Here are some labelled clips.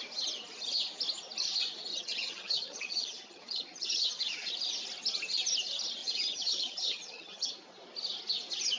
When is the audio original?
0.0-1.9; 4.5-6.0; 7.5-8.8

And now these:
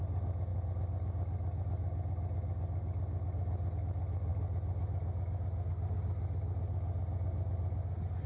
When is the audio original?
0.0-8.3